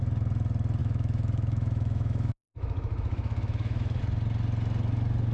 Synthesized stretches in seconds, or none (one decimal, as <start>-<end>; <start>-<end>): 0.8-4.0